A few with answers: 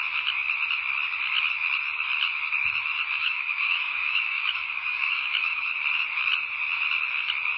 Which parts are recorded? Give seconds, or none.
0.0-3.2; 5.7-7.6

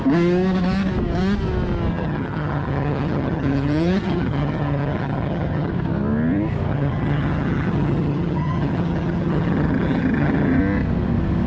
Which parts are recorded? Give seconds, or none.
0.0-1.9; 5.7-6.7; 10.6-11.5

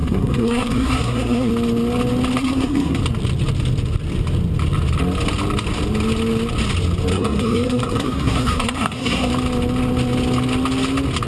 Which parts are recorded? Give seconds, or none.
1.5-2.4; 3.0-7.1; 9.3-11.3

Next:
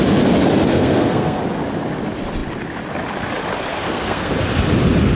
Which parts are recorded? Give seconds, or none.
0.0-0.7; 1.4-3.7; 4.3-5.1